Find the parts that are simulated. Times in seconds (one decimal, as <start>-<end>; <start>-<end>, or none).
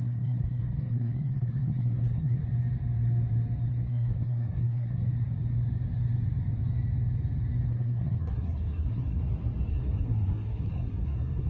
0.0-2.4; 3.7-5.1; 7.7-9.2; 9.7-11.5